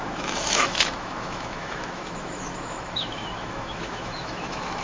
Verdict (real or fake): fake